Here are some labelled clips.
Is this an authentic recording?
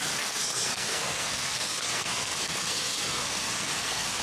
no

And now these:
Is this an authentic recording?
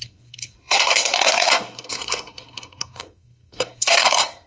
no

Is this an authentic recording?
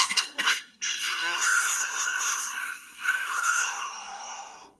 no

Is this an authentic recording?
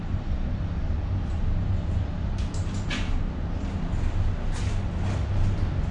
yes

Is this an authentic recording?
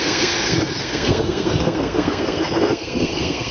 no